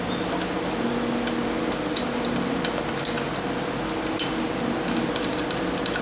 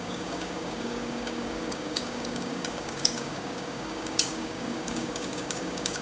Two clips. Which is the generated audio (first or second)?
second